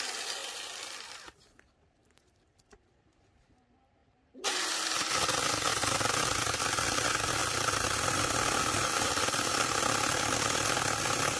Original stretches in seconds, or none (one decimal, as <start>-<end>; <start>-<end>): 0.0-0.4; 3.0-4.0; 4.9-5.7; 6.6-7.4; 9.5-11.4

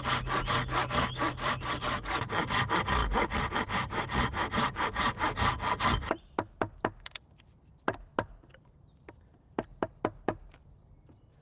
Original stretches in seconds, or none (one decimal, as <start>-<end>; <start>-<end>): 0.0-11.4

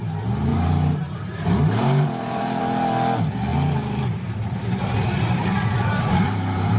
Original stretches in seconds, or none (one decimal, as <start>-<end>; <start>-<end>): 0.0-0.5; 2.6-3.5

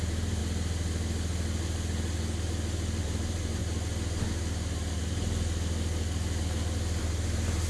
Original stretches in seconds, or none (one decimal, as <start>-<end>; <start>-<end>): 0.4-3.0; 3.6-7.0